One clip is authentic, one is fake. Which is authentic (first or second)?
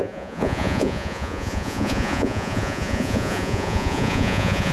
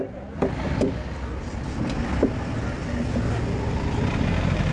second